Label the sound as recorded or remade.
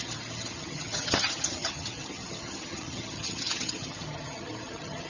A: remade